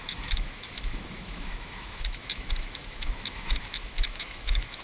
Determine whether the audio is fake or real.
fake